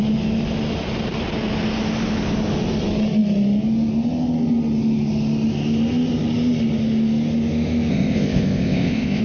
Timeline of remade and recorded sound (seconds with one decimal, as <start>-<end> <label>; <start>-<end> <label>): 0.0-7.9 recorded; 7.9-9.2 remade